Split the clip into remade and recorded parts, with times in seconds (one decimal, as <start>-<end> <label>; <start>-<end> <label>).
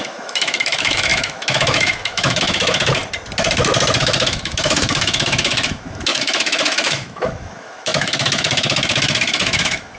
0.0-3.0 remade; 3.0-4.0 recorded; 4.0-10.0 remade